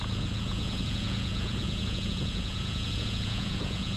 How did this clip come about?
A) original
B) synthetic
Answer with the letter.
B